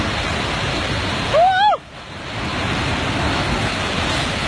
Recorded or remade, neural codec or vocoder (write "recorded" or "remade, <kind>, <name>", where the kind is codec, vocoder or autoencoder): recorded